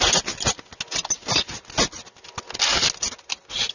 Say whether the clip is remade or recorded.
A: recorded